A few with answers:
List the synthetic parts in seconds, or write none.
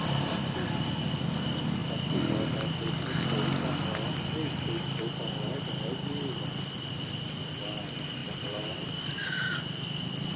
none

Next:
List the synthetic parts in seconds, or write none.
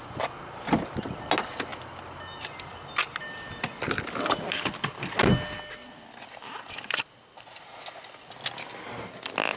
none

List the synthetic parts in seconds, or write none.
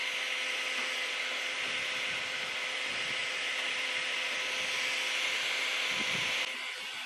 none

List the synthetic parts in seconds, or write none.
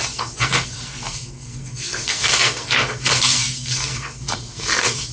0.0-5.1 (codec, SNAC)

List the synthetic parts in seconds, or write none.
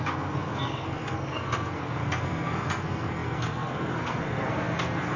0.0-5.2 (codec, SNAC)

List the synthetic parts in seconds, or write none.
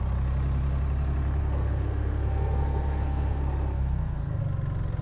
1.4-4.4 (codec, SNAC)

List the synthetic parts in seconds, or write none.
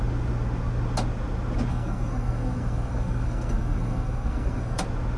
1.7-4.8 (codec, SNAC)